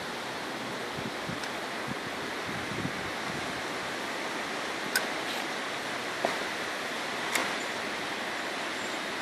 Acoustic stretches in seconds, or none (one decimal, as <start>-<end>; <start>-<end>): 0.0-9.2